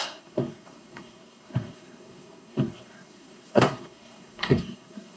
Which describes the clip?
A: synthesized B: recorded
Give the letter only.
A